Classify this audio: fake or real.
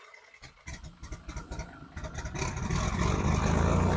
real